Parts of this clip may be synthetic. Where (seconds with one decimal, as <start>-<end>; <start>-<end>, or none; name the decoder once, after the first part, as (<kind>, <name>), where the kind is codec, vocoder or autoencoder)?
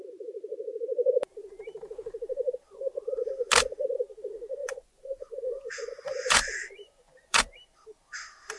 4.6-7.4 (vocoder, Vocos)